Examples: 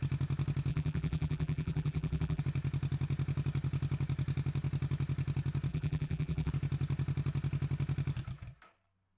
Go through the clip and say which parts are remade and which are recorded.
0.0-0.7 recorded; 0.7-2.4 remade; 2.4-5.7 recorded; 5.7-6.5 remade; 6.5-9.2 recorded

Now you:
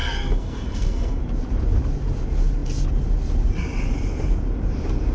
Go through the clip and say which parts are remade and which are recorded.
0.0-1.2 remade; 1.2-5.1 recorded